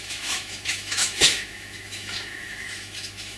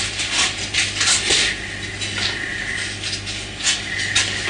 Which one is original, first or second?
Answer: second